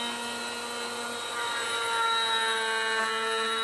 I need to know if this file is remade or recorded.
recorded